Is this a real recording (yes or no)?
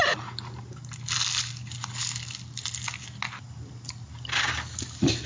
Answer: yes